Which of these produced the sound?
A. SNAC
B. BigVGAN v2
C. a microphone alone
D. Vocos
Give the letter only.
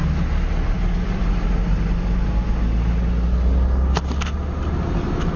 C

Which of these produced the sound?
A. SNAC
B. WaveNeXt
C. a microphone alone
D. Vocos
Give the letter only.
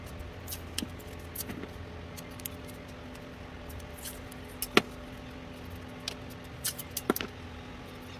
C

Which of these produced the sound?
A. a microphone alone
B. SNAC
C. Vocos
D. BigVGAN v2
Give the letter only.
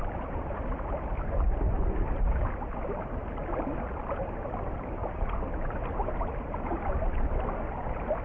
A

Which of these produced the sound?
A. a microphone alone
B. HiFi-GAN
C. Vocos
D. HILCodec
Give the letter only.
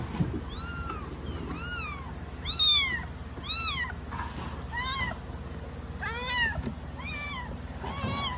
A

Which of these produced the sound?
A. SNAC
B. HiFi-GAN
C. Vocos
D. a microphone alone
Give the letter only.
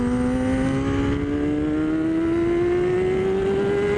D